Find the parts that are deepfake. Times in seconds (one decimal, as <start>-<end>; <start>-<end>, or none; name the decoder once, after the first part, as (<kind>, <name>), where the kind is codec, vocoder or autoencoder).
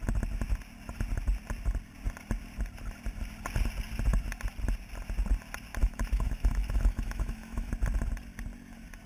5.8-7.7 (autoencoder, DAC-VAE)